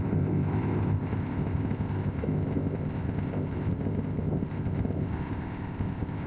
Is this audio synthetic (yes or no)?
yes